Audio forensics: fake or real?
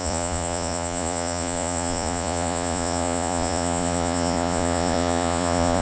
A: fake